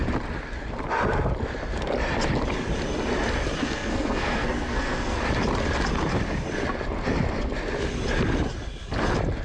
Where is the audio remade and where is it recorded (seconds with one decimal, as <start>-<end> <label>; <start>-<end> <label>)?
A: 0.0-3.6 recorded; 3.6-5.2 remade; 5.2-9.4 recorded